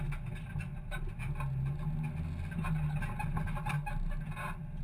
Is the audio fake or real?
real